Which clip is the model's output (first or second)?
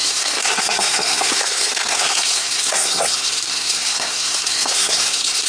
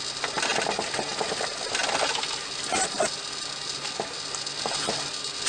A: first